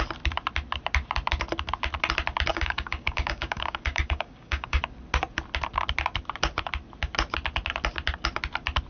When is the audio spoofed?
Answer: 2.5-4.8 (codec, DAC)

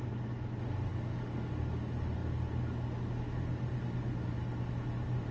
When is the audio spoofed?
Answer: 0.9-1.5 (codec, DAC)

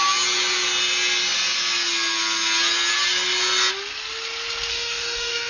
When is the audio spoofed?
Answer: 4.7-5.5 (codec, DAC)

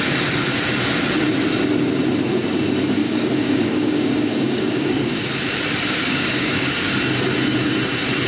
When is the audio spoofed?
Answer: 3.0-5.2 (codec, DAC); 6.0-6.9

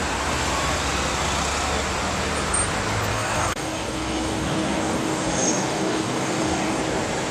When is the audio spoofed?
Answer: 3.1-6.8 (codec, DAC)

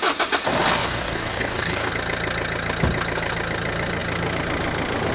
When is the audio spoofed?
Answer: 0.8-1.9 (codec, DAC)

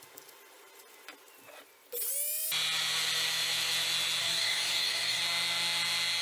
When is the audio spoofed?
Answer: 4.2-5.2 (codec, DAC)

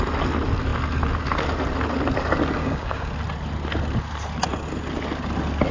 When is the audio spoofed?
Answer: 2.6-3.1 (codec, DAC)